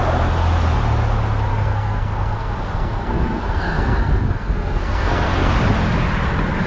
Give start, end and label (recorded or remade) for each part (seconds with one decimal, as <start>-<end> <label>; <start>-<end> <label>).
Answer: 0.0-1.5 recorded; 1.5-5.5 remade; 5.5-6.7 recorded